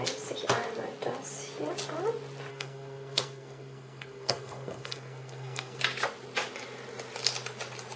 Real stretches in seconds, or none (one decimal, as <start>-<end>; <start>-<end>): 0.0-2.5; 5.8-8.0

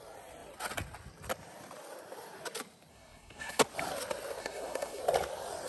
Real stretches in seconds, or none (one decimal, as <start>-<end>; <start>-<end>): 0.0-2.9; 3.6-4.4; 5.0-5.7

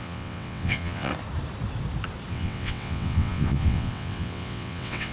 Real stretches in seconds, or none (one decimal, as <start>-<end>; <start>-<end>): 1.1-2.3

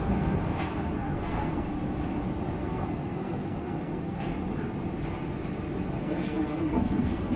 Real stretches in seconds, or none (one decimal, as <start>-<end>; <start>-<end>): 1.7-2.6; 4.3-6.0

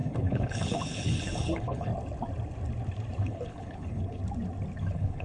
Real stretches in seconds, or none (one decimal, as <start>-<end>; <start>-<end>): 1.9-3.2; 4.2-4.8